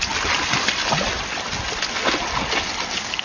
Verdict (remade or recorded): recorded